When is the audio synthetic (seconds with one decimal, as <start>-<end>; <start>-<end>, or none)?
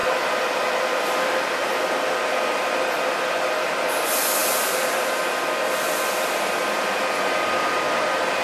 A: none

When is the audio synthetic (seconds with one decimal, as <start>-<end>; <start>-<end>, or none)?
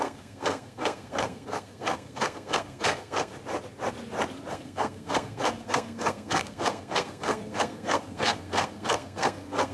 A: 0.0-3.3; 4.5-9.7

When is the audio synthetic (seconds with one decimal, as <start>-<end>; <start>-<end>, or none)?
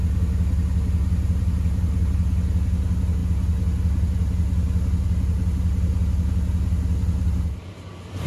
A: none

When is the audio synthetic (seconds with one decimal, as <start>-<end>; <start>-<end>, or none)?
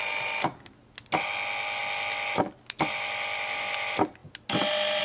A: none